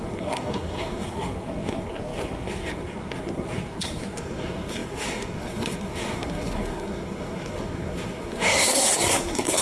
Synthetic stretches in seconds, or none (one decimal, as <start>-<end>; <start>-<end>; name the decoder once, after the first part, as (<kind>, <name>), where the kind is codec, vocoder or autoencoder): 0.0-9.6 (codec, SNAC)